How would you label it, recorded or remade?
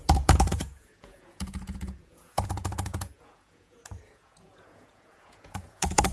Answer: remade